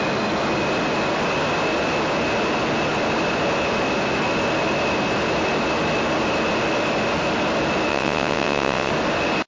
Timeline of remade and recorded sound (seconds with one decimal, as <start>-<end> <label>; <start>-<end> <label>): 0.0-7.9 recorded; 7.9-8.9 remade; 8.9-9.5 recorded